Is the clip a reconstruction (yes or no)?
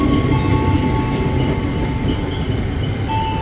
no